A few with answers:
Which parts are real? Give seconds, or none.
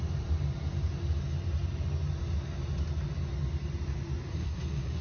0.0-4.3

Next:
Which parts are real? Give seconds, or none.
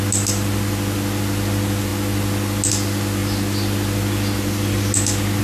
0.0-5.4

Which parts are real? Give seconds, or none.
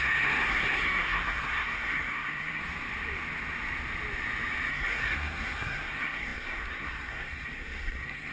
2.6-4.7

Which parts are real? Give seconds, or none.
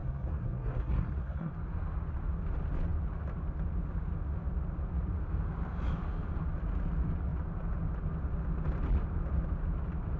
1.5-10.2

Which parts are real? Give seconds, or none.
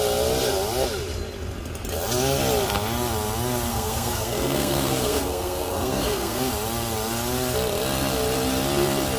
0.0-3.7; 6.5-9.2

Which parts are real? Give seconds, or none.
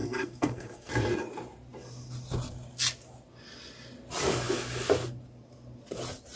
0.9-6.4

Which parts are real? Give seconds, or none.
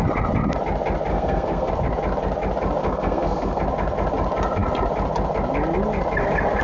0.0-1.1; 1.7-2.8; 3.6-6.6